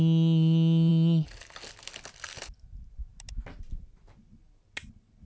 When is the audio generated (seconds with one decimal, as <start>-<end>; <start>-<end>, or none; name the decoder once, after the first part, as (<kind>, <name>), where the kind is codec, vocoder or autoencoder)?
none